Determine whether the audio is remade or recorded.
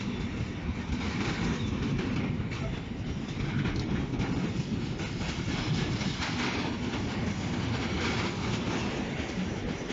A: recorded